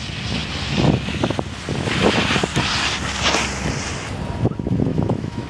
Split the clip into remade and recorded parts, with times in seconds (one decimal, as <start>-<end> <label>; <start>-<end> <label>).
0.0-4.9 recorded; 4.9-5.5 remade